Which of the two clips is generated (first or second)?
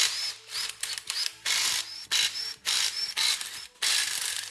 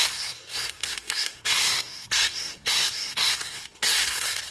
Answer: second